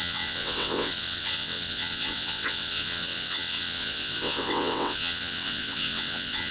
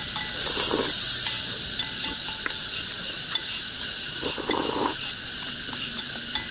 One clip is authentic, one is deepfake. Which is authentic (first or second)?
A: second